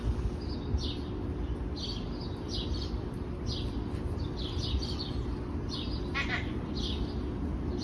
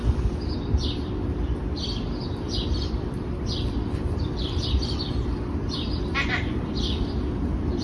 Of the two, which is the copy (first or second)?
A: second